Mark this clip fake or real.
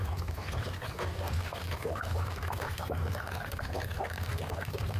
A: fake